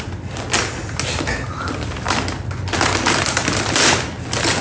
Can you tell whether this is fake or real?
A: real